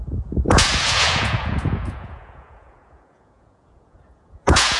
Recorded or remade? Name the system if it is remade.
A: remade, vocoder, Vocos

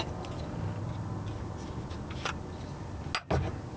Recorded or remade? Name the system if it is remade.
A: recorded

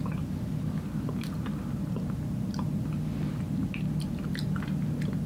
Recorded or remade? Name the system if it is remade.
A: recorded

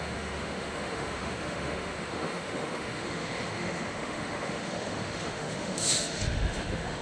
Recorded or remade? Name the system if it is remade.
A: remade, autoencoder, DAC-VAE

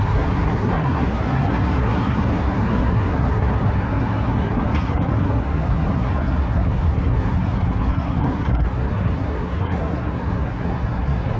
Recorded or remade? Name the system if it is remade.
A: remade, codec, SNAC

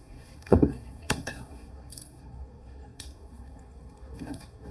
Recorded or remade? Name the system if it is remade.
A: remade, codec, SNAC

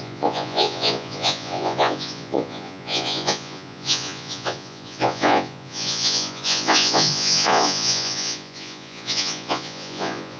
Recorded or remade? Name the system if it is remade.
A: remade, vocoder, Vocos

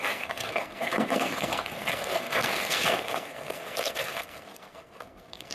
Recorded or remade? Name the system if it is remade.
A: remade, codec, SNAC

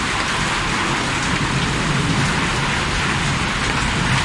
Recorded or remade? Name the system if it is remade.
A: recorded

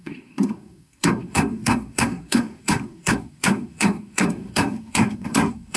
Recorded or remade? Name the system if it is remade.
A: remade, codec, SNAC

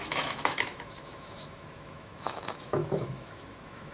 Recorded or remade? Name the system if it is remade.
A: remade, autoencoder, DAC-VAE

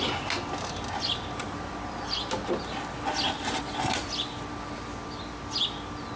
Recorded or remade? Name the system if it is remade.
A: recorded